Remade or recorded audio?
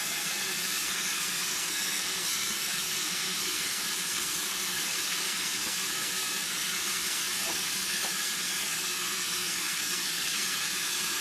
remade